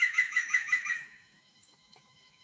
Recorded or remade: remade